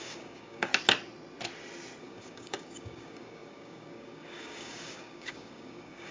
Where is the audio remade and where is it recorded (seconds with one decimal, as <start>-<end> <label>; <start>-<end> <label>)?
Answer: 0.0-0.7 remade; 0.7-2.0 recorded; 2.0-6.1 remade

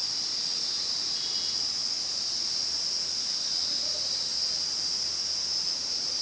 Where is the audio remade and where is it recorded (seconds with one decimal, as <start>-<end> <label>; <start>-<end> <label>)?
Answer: 0.0-6.2 recorded